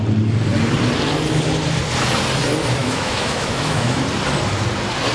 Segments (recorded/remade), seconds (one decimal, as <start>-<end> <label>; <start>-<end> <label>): 0.0-2.8 recorded; 2.8-4.0 remade; 4.0-5.1 recorded